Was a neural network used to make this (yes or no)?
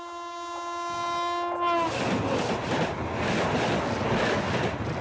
no